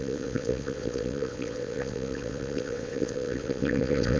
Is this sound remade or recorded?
remade